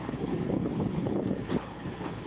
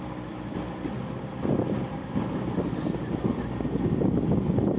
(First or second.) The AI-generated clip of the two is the first